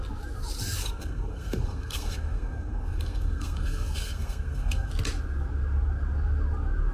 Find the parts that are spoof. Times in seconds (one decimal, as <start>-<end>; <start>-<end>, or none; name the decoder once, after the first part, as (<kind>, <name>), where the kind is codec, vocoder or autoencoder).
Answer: 0.8-4.9 (codec, SNAC)